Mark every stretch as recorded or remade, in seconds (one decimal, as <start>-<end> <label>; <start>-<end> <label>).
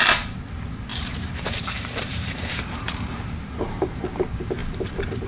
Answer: 0.0-0.9 recorded; 0.9-4.1 remade; 4.1-4.6 recorded; 4.6-5.3 remade